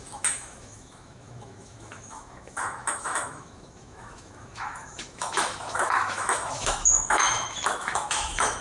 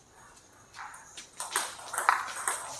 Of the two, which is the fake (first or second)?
first